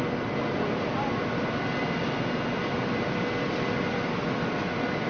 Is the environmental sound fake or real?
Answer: real